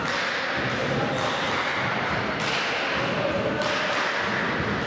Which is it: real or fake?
real